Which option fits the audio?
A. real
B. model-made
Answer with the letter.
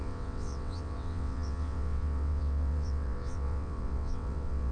B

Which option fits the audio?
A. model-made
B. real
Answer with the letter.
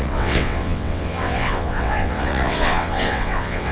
A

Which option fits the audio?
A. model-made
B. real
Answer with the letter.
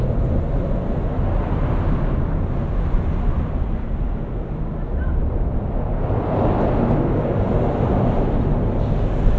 B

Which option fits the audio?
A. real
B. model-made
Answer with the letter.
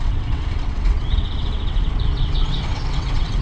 B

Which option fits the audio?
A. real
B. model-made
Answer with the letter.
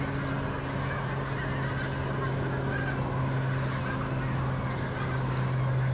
A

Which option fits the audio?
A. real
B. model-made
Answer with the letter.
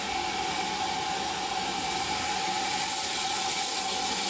A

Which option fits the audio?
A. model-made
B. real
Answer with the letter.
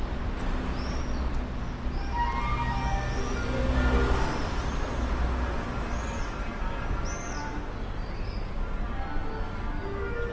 B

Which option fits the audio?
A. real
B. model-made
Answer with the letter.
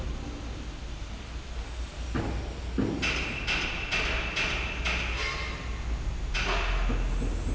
A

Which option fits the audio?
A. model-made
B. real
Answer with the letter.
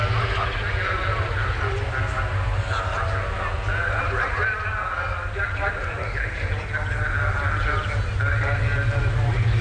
B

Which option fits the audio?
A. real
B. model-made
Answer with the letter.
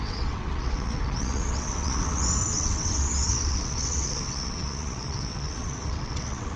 B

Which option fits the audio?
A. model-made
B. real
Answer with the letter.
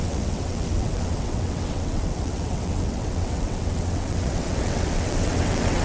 A